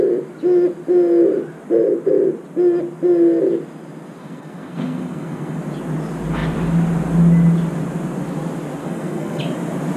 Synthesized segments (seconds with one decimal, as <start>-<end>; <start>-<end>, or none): 4.2-5.6; 8.8-9.4